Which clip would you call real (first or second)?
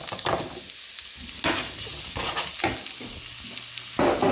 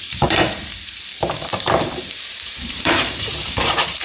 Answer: first